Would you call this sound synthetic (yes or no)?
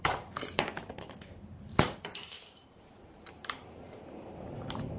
yes